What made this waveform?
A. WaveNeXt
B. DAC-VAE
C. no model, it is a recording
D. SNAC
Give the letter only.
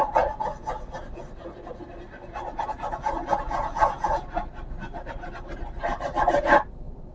C